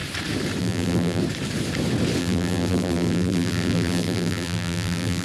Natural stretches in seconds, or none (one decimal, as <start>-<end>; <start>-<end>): 0.0-0.6; 1.2-2.2